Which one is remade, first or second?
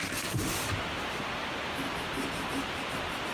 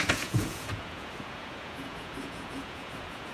second